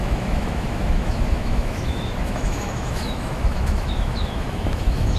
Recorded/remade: remade